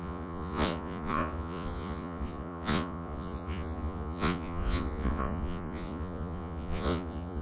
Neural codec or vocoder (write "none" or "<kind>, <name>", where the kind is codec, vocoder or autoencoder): vocoder, Vocos